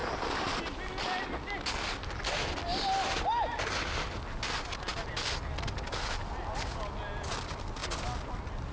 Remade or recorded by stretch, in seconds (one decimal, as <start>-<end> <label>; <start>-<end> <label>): 0.0-8.7 recorded

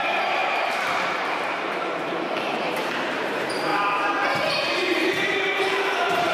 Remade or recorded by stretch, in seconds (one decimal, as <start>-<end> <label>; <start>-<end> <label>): 0.0-3.7 remade; 3.7-4.4 recorded; 4.4-6.3 remade

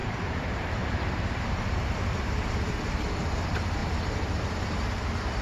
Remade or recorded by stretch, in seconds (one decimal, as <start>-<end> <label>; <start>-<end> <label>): 0.0-3.2 remade; 3.2-5.4 recorded

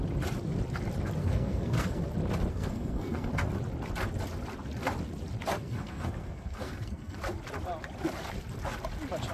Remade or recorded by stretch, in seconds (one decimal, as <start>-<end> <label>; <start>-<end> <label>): 0.0-1.2 recorded; 1.2-2.0 remade; 2.0-2.5 recorded; 2.5-3.3 remade; 3.3-5.5 recorded; 5.5-7.2 remade; 7.2-9.3 recorded